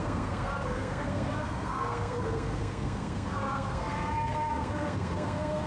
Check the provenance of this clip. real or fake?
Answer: fake